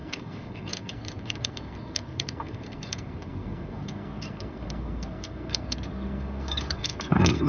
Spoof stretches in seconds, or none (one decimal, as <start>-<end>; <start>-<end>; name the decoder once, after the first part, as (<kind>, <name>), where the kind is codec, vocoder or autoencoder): 0.0-7.5 (codec, SNAC)

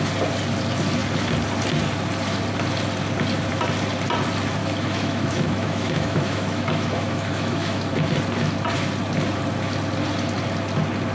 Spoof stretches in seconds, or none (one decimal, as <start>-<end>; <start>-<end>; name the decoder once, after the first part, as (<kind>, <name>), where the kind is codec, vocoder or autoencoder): 4.6-7.9 (autoencoder, DAC-VAE)

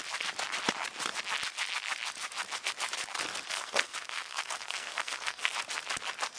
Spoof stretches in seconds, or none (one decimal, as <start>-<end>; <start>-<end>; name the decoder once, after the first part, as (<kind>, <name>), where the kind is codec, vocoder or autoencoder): 3.5-5.5 (codec, SNAC)

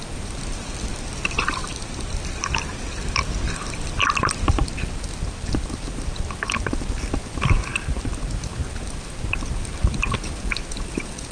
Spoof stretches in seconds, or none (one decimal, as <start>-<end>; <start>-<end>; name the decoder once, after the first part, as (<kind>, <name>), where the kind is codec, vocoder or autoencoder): 1.6-2.1 (vocoder, BigVGAN v2); 7.7-8.3; 9.7-10.2